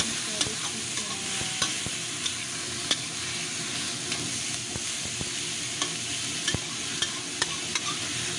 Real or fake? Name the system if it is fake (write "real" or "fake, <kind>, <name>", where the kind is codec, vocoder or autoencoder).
real